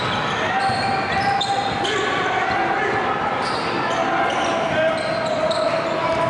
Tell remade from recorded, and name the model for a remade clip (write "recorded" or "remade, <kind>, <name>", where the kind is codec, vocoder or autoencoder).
recorded